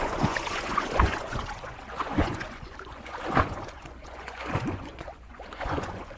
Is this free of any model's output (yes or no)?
no